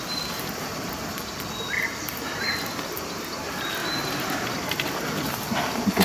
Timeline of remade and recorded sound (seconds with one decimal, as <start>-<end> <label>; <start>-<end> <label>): 0.0-3.8 recorded; 3.8-6.0 remade